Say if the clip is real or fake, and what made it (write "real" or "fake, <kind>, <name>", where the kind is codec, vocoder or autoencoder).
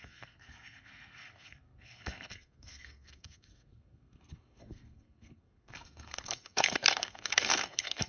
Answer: fake, codec, SNAC